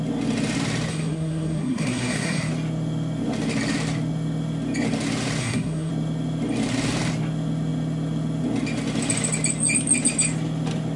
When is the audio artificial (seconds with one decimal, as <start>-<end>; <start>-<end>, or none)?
0.9-2.5; 5.4-5.9